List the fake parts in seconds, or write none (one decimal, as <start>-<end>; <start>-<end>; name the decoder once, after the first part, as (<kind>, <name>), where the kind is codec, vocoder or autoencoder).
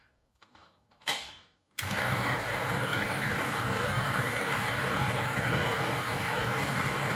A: 0.0-7.2 (codec, DAC)